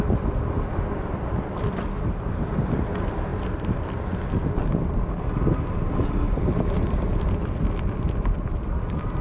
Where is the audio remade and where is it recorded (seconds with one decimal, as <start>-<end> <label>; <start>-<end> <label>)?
0.0-9.2 recorded